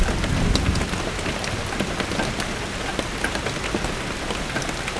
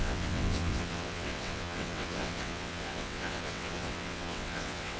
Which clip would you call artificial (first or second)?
second